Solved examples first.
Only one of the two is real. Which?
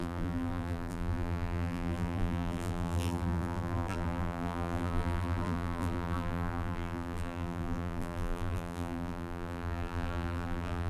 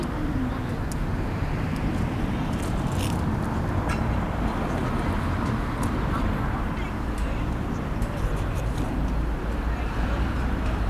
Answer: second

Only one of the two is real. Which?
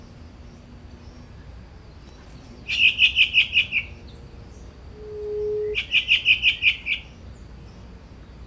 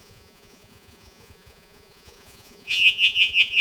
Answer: first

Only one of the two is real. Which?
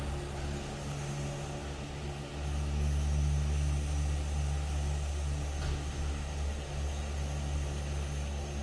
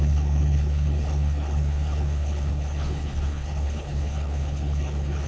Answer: first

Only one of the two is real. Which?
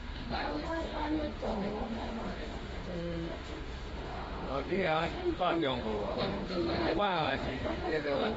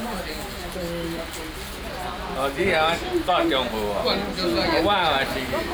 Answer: second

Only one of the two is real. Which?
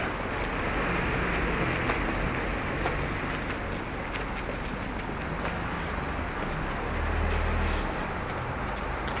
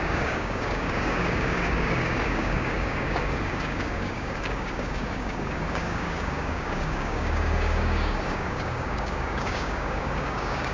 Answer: first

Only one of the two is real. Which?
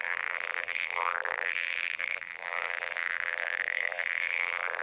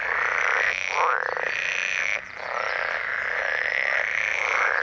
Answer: second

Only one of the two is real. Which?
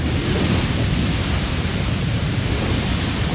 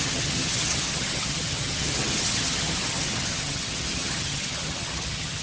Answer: first